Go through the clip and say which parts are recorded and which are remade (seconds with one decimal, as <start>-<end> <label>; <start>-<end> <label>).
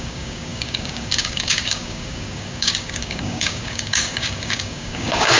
0.0-5.4 remade